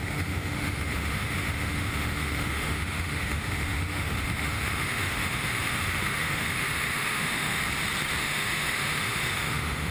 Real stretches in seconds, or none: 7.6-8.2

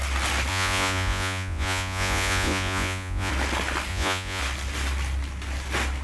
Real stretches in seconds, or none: 0.0-0.5; 3.3-3.9; 4.4-6.0

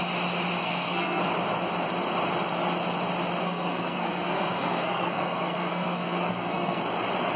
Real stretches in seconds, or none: 0.0-0.6; 1.2-3.4; 6.8-7.4

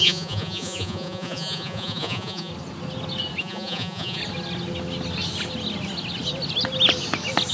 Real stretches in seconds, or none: 2.5-3.4; 4.2-7.5

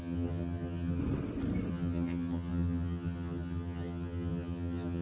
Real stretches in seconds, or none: 1.0-1.7

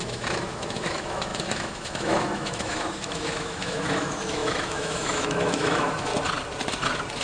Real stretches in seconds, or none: 6.1-7.2

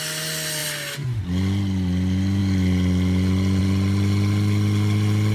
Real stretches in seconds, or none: 0.0-5.3

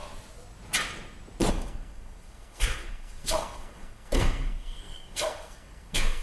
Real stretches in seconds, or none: 0.0-1.5